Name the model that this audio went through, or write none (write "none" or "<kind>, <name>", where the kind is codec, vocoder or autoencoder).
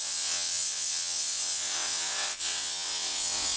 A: vocoder, WaveNeXt